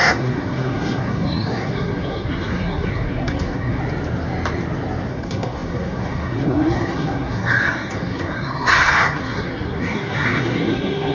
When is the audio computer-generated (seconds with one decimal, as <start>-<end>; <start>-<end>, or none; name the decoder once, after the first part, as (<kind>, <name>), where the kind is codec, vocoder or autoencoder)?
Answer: 0.0-3.8 (codec, SNAC); 5.1-11.1